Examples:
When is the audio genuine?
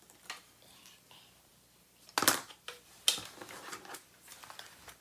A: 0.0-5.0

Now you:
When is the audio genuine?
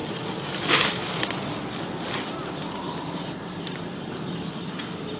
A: 1.3-2.4; 4.8-5.2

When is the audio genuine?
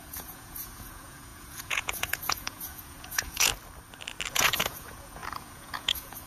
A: 3.5-4.3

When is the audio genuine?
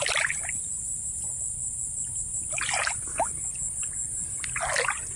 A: 0.0-5.2